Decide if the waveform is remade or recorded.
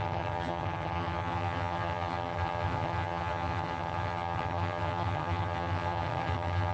remade